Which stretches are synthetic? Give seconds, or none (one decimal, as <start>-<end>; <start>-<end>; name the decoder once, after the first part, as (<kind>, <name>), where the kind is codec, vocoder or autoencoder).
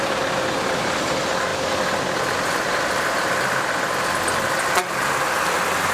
none